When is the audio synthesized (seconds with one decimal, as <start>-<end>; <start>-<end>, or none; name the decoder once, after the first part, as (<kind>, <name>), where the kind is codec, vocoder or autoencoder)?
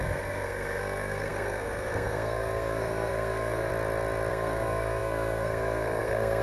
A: 0.0-3.7 (codec, SNAC); 4.3-6.4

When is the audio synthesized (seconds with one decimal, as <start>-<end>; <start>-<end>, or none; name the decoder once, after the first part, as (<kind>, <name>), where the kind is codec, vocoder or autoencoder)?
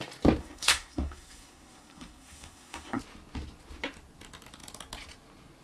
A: 0.4-3.0 (codec, SNAC)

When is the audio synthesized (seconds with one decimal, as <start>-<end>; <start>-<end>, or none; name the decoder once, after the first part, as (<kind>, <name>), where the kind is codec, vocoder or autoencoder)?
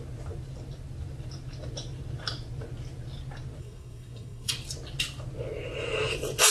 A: 3.6-4.5 (codec, SNAC)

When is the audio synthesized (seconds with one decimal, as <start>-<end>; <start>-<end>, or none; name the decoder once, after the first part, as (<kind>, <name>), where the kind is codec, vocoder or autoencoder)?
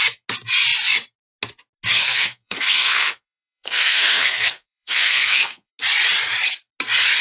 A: 1.9-5.7 (codec, SNAC)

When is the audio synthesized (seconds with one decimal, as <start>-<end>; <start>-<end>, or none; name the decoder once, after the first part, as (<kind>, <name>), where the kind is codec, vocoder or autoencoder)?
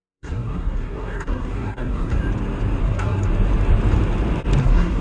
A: 0.0-2.1 (codec, SNAC); 2.8-3.3; 4.6-5.0